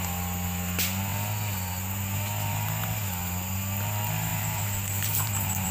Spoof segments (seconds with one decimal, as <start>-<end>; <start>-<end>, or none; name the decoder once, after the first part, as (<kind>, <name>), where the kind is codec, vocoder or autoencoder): 4.3-5.7 (vocoder, BigVGAN v2)